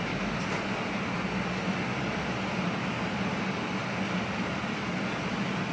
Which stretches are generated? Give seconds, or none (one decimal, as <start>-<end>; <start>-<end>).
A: none